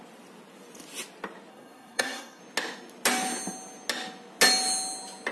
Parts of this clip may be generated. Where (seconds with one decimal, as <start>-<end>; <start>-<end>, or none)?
1.5-2.4

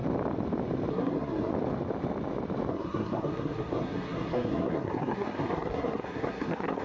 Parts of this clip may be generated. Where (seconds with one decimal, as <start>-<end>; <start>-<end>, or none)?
0.9-1.5; 2.7-6.8

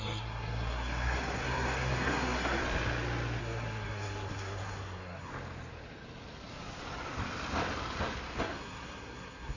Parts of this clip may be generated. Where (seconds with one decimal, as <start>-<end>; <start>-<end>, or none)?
0.0-2.6; 3.4-5.3; 8.4-9.6

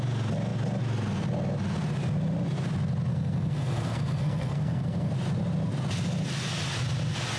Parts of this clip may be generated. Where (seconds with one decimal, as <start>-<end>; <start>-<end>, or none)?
3.1-5.1

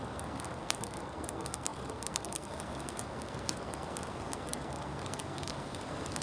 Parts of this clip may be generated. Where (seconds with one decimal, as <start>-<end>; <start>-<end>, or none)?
0.0-6.2

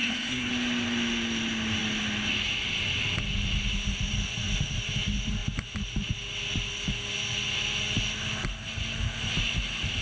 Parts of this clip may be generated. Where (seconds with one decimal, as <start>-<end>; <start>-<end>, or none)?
0.0-0.5